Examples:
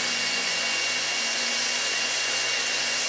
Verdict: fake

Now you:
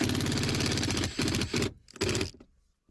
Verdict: real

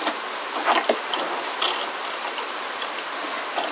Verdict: real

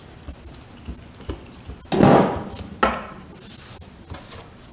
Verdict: real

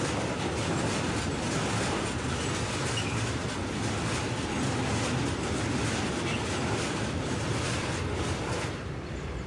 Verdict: real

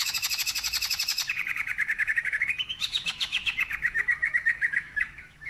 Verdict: fake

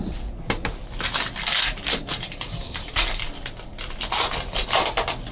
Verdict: real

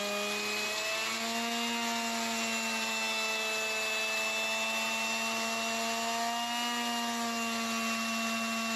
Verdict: real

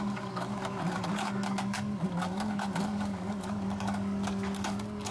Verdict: fake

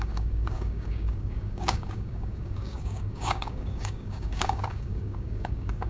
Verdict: fake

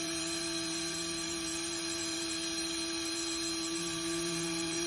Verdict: fake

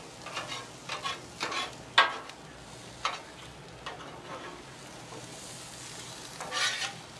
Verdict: real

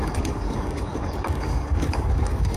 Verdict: fake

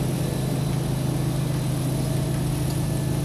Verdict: real